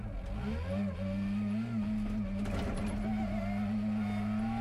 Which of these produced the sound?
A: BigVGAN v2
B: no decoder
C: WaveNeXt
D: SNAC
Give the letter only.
B